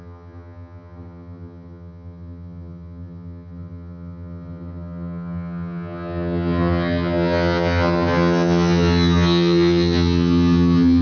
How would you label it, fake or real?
fake